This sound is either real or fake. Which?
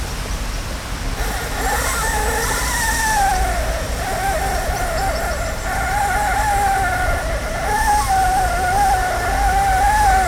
real